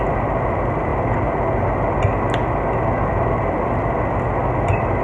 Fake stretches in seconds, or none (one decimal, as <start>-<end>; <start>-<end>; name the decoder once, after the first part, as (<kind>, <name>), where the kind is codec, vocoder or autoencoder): none